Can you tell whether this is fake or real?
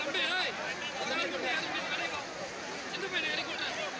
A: real